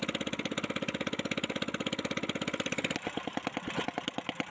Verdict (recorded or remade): recorded